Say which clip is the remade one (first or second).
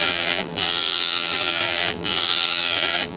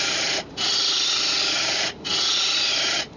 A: first